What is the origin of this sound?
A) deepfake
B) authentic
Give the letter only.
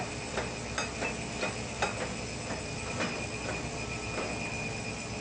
B